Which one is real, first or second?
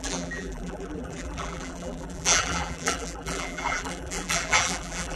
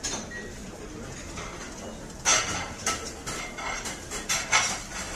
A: second